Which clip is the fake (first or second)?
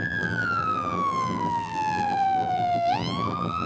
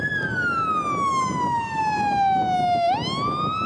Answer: first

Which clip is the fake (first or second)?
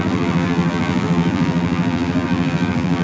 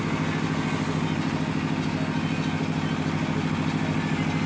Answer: first